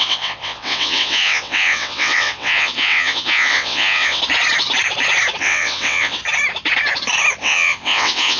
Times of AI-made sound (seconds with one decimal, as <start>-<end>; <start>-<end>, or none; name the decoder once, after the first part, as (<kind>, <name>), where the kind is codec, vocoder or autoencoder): 0.0-4.2 (vocoder, WaveNeXt); 5.4-6.2; 7.4-8.4